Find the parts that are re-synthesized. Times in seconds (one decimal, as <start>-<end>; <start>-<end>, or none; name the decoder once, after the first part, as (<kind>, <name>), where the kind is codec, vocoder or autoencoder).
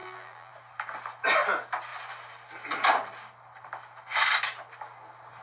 0.0-0.5 (vocoder, BigVGAN v2)